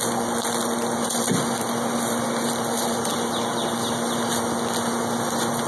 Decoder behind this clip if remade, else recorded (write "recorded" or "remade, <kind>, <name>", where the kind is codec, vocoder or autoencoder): recorded